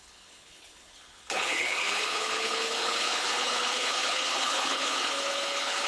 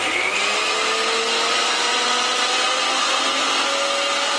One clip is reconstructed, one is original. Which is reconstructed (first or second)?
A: first